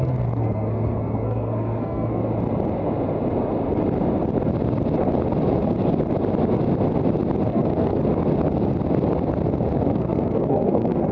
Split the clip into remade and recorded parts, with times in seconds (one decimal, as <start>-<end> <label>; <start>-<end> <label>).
0.0-2.2 remade; 2.2-7.5 recorded; 7.5-8.0 remade; 8.0-9.9 recorded; 9.9-11.1 remade

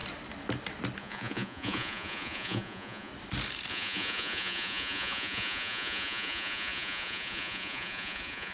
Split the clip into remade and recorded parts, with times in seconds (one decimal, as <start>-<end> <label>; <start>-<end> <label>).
0.0-1.0 recorded; 1.0-3.1 remade; 3.1-3.7 recorded; 3.7-8.5 remade

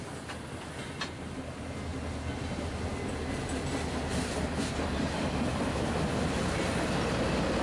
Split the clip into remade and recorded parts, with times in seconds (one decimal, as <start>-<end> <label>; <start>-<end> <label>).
0.0-7.6 recorded

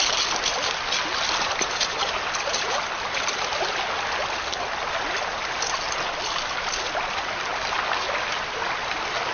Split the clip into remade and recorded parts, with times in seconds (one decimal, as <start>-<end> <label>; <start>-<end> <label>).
0.0-9.3 recorded

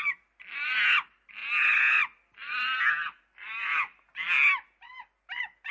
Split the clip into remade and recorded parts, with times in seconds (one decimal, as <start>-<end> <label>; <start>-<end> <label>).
0.0-5.7 recorded

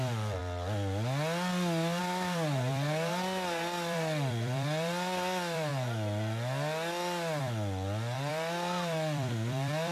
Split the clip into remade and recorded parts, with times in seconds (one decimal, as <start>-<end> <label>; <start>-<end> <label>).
0.0-0.4 remade; 0.4-2.0 recorded; 2.0-5.7 remade; 5.7-7.4 recorded; 7.4-9.9 remade